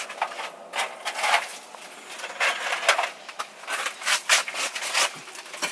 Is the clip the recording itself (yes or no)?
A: yes